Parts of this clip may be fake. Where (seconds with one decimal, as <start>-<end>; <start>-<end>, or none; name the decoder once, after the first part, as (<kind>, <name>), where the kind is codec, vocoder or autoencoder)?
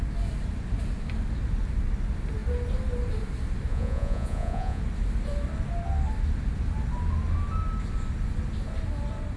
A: 3.7-4.8 (vocoder, Vocos)